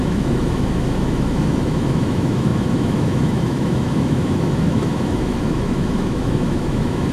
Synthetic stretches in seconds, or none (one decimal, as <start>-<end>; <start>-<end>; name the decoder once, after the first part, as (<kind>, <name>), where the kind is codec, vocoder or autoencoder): 0.0-7.1 (autoencoder, DAC-VAE)